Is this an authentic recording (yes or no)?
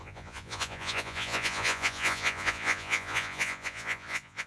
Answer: no